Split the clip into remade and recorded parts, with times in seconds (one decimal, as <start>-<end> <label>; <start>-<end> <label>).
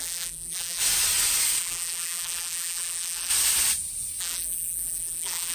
0.0-0.8 remade; 0.8-1.6 recorded; 1.6-3.3 remade; 3.3-4.2 recorded; 4.2-5.5 remade